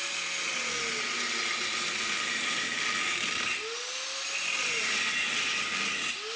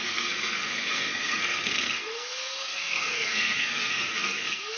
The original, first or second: first